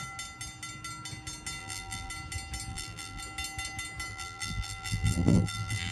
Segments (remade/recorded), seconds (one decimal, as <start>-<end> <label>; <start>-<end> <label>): 0.0-1.6 recorded; 1.6-2.1 remade; 2.1-2.7 recorded; 2.7-3.2 remade; 3.2-4.1 recorded; 4.1-5.9 remade